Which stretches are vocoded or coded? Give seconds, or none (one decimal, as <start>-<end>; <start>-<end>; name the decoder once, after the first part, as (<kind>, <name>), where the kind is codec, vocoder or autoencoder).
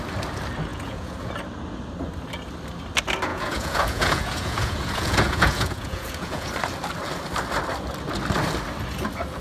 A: 0.7-1.3 (vocoder, Vocos); 3.3-6.5